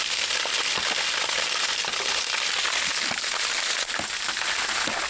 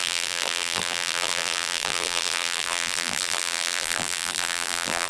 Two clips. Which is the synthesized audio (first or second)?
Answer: second